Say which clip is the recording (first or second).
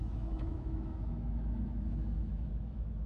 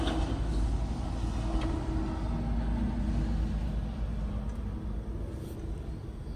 second